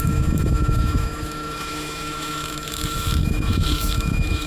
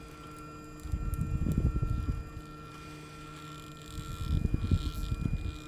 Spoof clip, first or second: first